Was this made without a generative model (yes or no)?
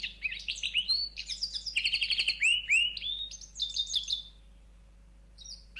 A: no